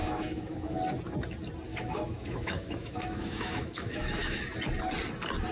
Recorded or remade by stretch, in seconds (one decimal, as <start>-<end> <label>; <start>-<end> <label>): 0.0-0.8 remade; 0.8-1.7 recorded; 1.7-4.4 remade; 4.4-5.5 recorded